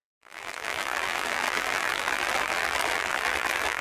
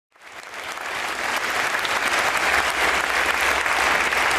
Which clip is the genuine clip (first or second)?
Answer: second